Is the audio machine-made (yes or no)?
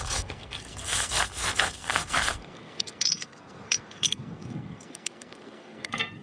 yes